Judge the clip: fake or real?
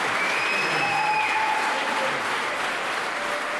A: real